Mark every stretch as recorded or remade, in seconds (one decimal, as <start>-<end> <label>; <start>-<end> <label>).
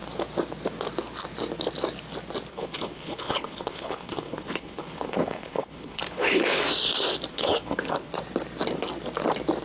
0.0-2.5 recorded; 2.5-6.6 remade; 6.6-7.3 recorded; 7.3-8.1 remade; 8.1-9.6 recorded